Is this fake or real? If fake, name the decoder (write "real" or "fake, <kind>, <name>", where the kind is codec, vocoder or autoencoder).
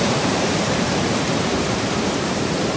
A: fake, vocoder, BigVGAN v2